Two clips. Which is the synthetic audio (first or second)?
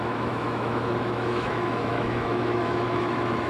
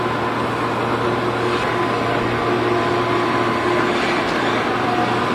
first